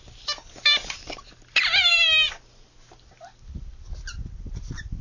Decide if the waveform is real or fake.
real